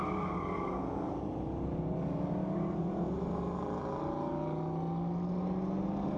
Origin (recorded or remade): recorded